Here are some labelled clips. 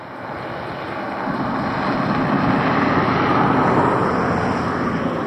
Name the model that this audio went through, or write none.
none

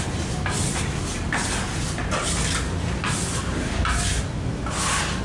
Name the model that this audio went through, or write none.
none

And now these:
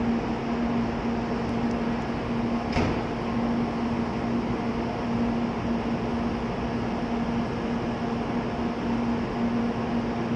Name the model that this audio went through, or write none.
none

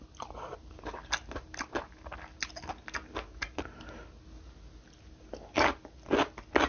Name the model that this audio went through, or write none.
none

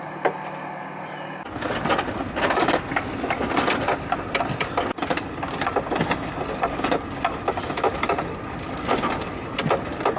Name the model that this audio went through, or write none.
none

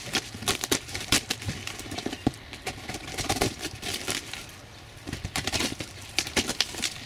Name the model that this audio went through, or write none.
vocoder, BigVGAN v2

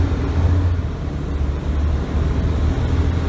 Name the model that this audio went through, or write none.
none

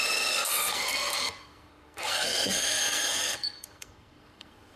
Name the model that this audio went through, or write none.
codec, SNAC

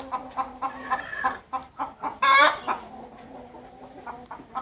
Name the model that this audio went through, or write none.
none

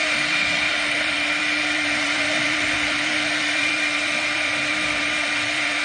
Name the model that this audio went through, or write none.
vocoder, BigVGAN v2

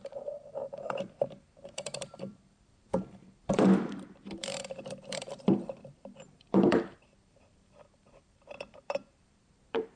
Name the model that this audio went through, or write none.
vocoder, BigVGAN v2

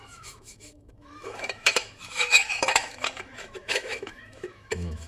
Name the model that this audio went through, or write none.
autoencoder, DAC-VAE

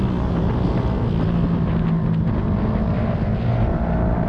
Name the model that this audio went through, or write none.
none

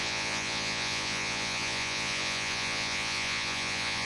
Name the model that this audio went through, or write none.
vocoder, Vocos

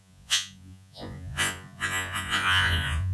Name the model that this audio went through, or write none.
vocoder, Vocos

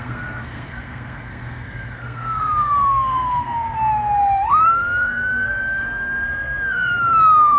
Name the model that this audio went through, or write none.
codec, SNAC